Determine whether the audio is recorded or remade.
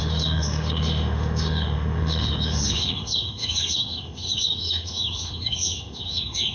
remade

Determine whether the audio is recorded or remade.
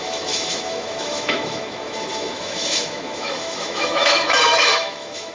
remade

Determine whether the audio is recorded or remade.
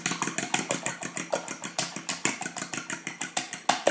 recorded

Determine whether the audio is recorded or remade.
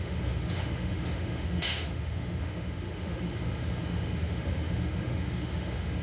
remade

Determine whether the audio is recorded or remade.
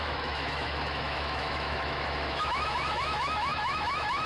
remade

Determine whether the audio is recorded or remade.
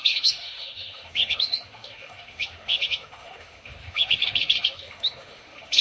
remade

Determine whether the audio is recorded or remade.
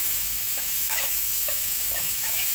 remade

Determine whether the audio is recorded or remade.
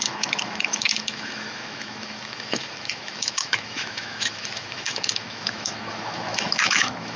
remade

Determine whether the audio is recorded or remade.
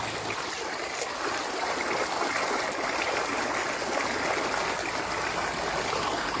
recorded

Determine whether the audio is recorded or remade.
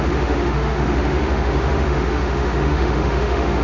remade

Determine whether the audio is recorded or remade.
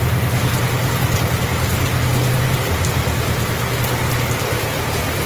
recorded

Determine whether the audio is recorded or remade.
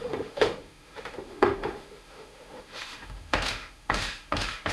remade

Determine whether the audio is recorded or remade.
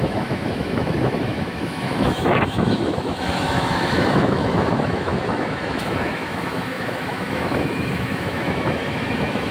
remade